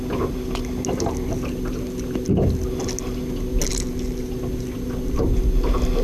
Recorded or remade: recorded